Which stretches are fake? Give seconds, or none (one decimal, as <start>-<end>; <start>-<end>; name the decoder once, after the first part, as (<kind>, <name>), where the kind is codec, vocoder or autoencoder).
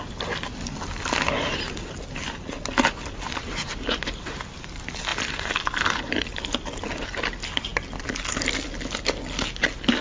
none